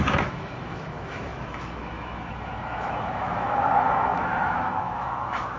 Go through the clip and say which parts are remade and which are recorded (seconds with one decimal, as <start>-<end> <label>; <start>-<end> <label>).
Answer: 0.0-5.6 remade